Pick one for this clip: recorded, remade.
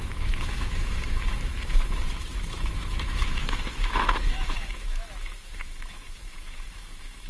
remade